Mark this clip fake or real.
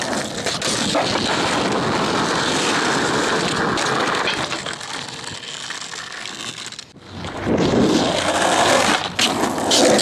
real